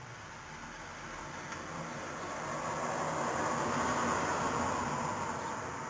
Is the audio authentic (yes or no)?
yes